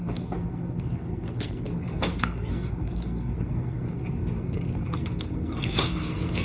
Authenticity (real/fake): fake